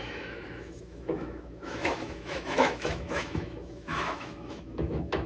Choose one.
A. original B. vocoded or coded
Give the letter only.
B